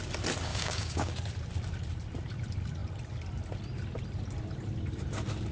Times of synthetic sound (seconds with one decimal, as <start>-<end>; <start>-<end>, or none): 0.5-1.1